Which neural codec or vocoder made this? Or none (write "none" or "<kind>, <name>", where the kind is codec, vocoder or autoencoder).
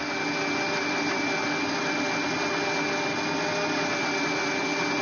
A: none